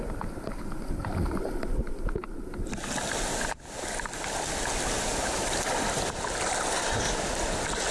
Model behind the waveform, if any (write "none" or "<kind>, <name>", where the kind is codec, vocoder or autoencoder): none